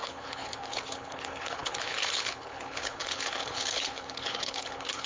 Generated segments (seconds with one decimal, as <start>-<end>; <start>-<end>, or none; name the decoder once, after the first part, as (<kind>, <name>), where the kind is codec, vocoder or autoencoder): 0.0-5.1 (codec, HILCodec)